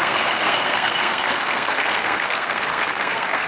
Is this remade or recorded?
remade